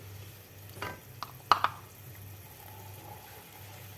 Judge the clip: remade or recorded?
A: recorded